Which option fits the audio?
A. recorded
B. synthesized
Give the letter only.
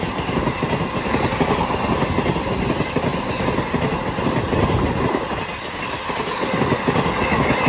A